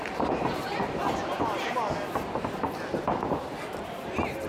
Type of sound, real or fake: real